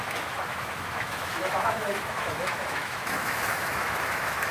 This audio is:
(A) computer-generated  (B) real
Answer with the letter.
A